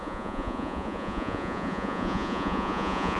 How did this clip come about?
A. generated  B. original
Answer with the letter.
A